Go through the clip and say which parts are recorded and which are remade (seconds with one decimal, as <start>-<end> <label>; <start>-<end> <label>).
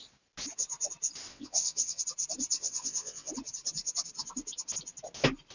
0.0-1.3 recorded; 1.3-2.0 remade; 2.0-2.6 recorded; 2.6-3.3 remade; 3.3-5.5 recorded